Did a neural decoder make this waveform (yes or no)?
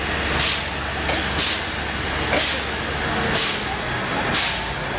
no